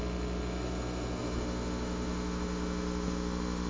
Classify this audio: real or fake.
fake